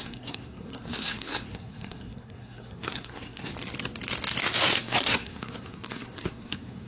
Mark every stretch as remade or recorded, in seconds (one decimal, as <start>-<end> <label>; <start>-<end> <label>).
0.0-3.5 remade; 3.5-4.4 recorded; 4.4-6.9 remade